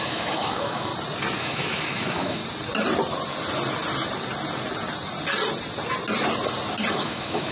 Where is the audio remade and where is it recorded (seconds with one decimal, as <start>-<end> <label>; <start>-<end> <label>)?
0.0-0.9 remade; 0.9-1.4 recorded; 1.4-2.4 remade; 2.4-6.9 recorded; 6.9-7.5 remade